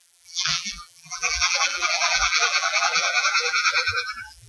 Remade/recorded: remade